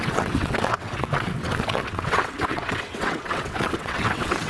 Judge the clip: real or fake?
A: fake